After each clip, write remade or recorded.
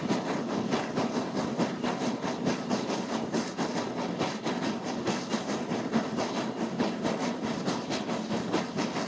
recorded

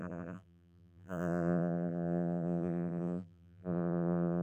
remade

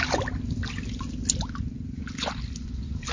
recorded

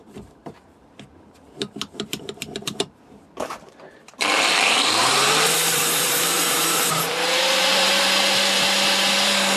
remade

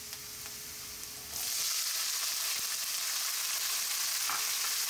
recorded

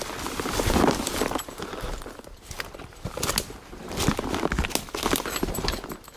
recorded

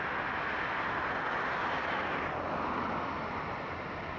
recorded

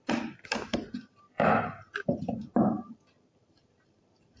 remade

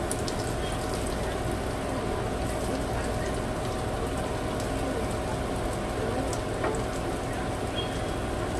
recorded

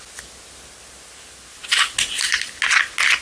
recorded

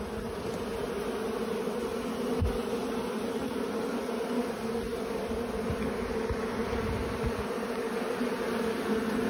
recorded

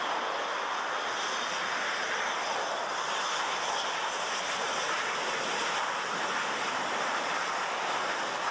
remade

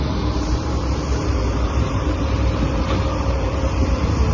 remade